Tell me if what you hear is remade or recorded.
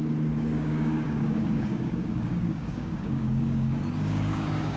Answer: remade